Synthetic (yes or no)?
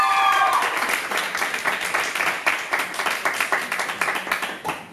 no